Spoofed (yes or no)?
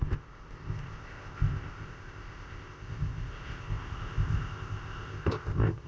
yes